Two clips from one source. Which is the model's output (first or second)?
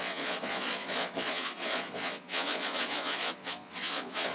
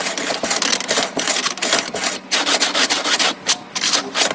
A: first